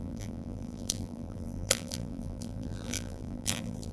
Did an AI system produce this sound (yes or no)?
yes